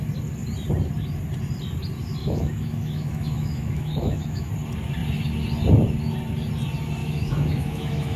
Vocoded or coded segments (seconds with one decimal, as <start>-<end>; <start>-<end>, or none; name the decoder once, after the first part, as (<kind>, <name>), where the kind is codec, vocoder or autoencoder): 2.2-4.5 (autoencoder, DAC-VAE); 7.0-8.2